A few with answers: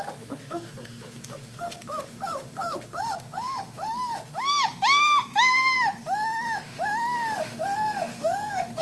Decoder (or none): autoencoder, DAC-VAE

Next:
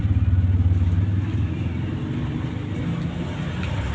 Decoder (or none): none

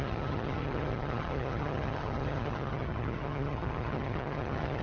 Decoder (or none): vocoder, HiFi-GAN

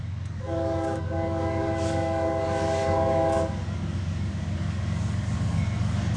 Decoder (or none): codec, DAC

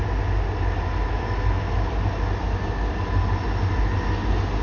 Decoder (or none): none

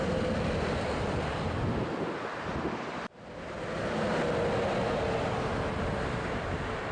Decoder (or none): none